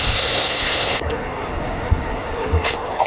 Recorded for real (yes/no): no